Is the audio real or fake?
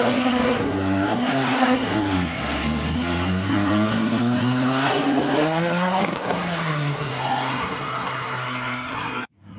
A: fake